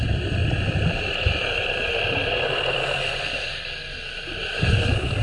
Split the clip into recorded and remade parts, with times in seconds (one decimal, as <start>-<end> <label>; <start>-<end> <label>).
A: 0.0-0.4 recorded; 0.4-3.5 remade; 3.5-5.2 recorded